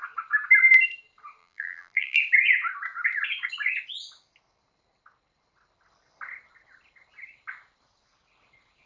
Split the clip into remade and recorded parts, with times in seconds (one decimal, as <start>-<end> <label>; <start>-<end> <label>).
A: 0.0-1.4 recorded; 1.4-2.2 remade; 2.2-8.9 recorded